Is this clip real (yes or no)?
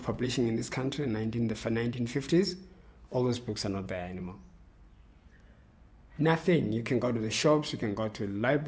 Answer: no